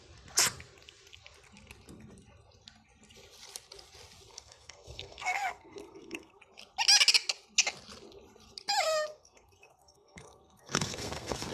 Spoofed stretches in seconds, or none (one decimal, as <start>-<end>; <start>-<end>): 4.3-6.4; 8.9-11.5